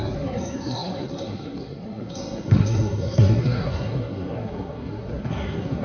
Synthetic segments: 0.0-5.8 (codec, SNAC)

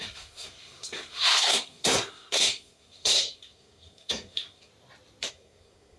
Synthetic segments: 0.0-4.7 (codec, SNAC); 5.3-6.0